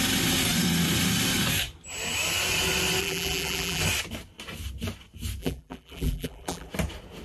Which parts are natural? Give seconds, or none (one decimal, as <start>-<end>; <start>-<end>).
0.0-3.0; 3.8-5.4; 6.7-7.2